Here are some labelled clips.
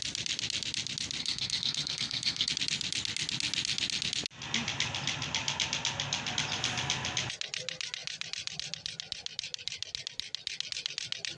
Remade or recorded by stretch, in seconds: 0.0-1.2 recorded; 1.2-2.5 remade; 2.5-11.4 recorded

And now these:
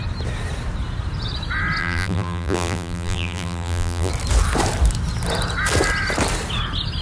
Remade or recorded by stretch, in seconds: 0.0-1.8 recorded; 1.8-4.1 remade; 4.1-7.0 recorded

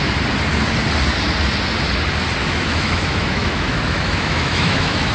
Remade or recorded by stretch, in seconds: 0.0-2.4 recorded; 2.4-5.1 remade

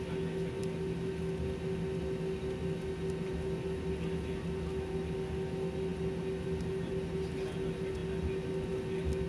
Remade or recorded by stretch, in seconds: 0.0-9.3 recorded

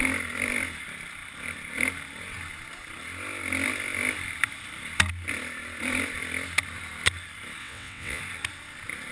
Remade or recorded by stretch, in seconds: 0.0-7.6 recorded; 7.6-8.2 remade; 8.2-9.1 recorded